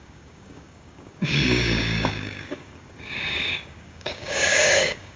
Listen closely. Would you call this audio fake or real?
fake